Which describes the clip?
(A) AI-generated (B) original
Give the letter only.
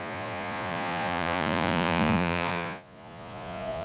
A